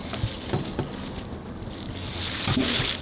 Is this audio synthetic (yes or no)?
no